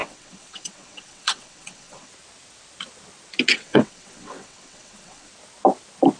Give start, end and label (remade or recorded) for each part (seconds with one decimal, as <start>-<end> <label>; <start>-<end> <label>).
0.0-2.1 remade; 2.1-3.5 recorded; 3.5-5.3 remade; 5.3-6.2 recorded